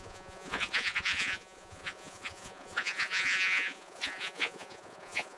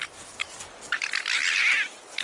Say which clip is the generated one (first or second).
first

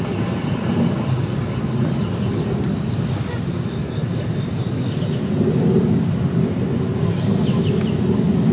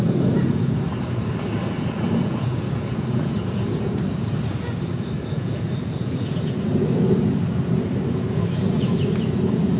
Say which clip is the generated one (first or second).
second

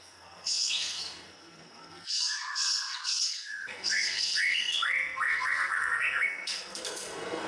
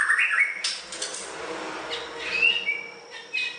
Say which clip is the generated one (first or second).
first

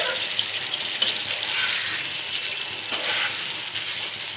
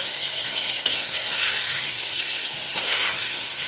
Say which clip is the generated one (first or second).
second